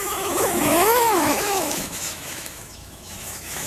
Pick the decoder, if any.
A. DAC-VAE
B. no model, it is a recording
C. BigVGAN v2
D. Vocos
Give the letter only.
A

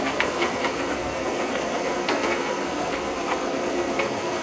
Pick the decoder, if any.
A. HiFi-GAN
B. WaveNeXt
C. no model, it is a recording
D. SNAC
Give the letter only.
D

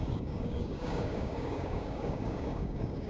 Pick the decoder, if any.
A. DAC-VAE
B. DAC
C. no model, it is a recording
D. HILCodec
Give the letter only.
B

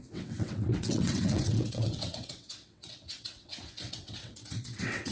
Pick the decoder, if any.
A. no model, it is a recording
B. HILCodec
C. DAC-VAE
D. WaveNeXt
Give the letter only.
D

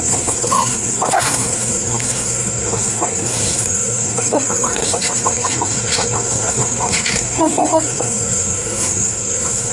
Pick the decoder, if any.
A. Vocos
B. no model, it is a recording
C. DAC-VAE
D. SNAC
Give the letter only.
D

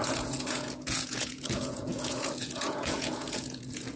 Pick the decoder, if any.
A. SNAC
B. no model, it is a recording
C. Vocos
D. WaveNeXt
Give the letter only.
C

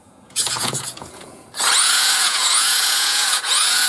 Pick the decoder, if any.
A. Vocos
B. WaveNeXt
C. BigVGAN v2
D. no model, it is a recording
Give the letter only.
A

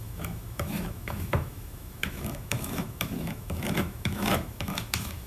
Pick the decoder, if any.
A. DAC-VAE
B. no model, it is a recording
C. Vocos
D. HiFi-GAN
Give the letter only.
A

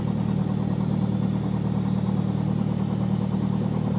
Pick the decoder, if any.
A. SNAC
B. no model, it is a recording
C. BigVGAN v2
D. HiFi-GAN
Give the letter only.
B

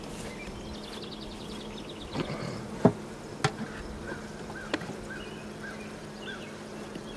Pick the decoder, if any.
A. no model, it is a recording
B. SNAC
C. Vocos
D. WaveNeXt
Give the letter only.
A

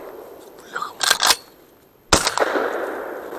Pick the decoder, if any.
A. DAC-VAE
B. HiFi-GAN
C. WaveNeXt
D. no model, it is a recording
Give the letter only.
D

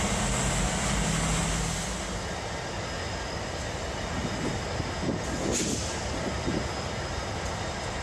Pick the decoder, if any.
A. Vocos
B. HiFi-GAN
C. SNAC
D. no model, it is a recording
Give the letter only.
D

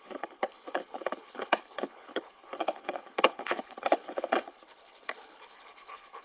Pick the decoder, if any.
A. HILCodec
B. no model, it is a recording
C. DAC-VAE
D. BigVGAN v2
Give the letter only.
A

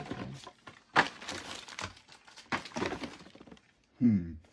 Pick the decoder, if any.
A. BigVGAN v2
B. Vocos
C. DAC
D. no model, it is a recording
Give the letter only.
A